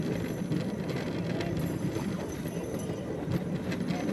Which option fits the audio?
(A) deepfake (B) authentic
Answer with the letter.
B